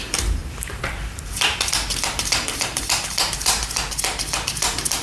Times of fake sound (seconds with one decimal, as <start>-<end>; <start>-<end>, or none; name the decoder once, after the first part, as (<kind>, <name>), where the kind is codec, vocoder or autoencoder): 0.0-3.6 (vocoder, BigVGAN v2); 4.2-5.0